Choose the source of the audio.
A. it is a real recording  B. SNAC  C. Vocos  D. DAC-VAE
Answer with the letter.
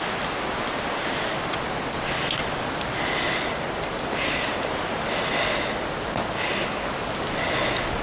A